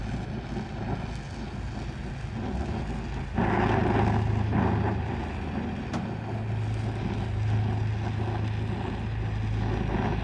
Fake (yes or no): no